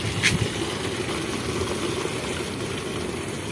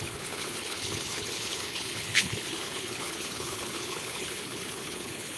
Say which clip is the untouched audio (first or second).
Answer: first